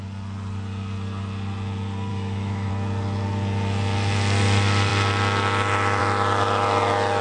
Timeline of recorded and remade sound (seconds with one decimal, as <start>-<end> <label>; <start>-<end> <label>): 0.0-2.1 recorded; 2.1-2.7 remade; 2.7-7.2 recorded